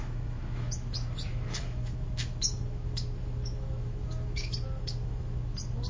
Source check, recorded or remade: remade